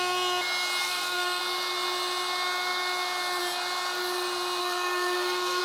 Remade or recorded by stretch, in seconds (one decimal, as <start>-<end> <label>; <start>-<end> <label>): 0.0-0.8 recorded; 0.8-1.4 remade; 1.4-4.6 recorded; 4.6-5.6 remade